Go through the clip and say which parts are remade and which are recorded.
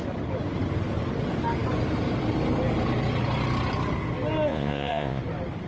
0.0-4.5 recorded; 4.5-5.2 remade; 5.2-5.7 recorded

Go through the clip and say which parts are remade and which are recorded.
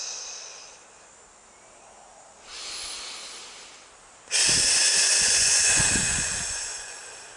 0.0-4.8 recorded; 4.8-7.0 remade; 7.0-7.4 recorded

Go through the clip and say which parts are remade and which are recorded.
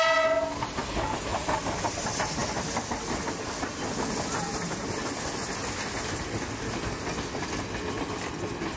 0.0-8.8 recorded